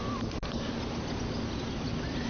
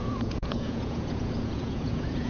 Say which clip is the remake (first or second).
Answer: second